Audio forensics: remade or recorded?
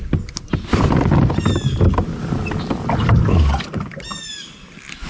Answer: recorded